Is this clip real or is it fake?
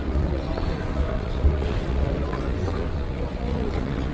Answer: fake